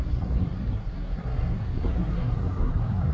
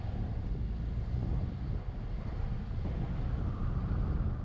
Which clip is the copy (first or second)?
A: first